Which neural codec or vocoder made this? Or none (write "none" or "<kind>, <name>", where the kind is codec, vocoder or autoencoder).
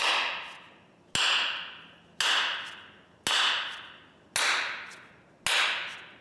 none